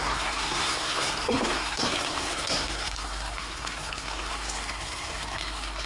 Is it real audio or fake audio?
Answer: fake